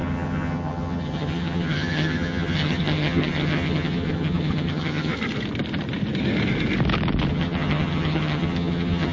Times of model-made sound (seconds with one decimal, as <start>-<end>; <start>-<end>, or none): 0.0-5.1; 7.3-9.1